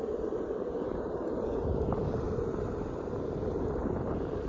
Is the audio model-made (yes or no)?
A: yes